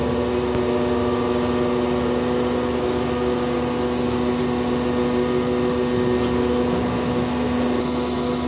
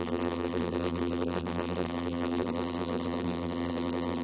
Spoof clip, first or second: second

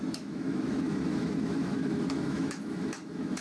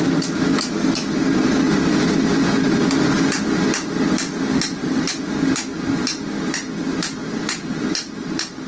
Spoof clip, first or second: first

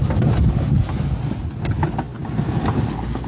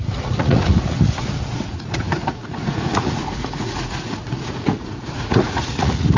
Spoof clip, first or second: second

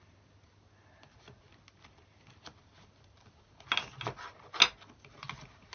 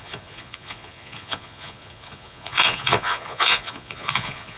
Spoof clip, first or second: second